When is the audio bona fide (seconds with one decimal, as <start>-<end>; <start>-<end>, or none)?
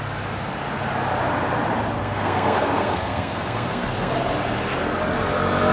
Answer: 0.0-2.0; 4.1-5.7